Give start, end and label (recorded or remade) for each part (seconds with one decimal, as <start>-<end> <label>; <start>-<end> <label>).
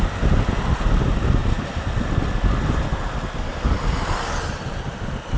0.0-5.4 recorded